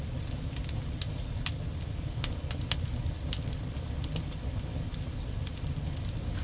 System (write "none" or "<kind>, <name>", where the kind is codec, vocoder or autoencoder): none